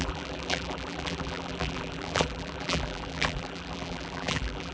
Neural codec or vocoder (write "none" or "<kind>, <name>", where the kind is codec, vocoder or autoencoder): vocoder, BigVGAN v2